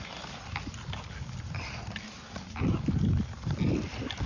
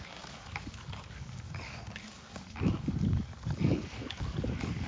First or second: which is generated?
second